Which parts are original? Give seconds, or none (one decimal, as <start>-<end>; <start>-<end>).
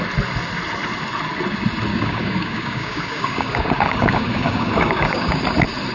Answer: 0.0-1.9; 5.4-5.9